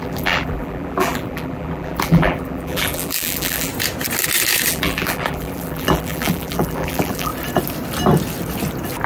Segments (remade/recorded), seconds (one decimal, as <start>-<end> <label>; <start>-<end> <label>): 0.0-3.7 remade; 3.7-4.7 recorded; 4.7-7.3 remade; 7.3-9.1 recorded